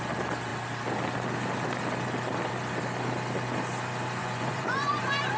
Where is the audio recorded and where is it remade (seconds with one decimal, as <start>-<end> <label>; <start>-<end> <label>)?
0.0-4.2 recorded; 4.2-5.0 remade; 5.0-5.4 recorded